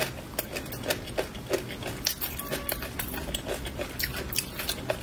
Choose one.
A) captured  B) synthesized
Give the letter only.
A